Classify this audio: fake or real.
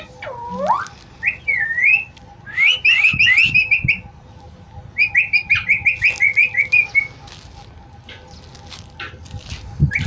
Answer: real